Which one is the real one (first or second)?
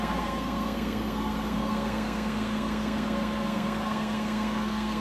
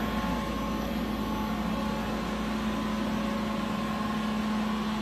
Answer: second